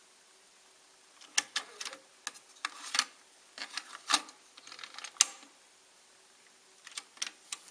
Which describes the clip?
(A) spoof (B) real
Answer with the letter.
B